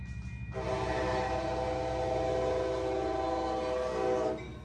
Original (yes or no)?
yes